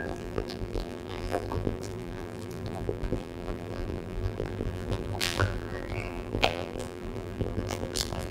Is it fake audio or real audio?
fake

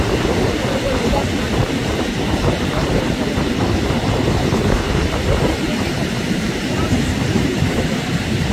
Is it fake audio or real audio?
fake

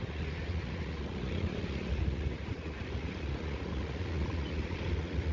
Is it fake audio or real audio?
fake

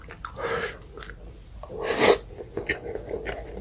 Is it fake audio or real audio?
real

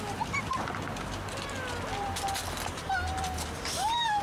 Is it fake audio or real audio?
real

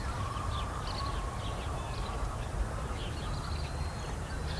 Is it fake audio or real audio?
fake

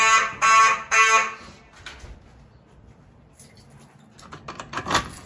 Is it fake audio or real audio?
real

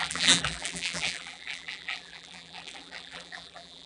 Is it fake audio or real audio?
fake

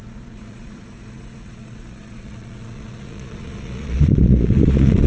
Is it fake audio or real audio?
fake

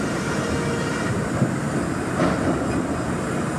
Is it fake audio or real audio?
real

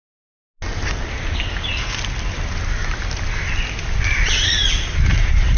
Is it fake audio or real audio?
real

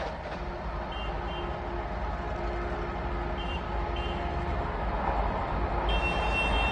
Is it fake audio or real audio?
real